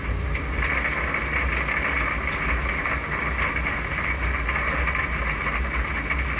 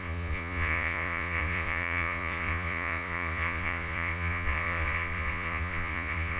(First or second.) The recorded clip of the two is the first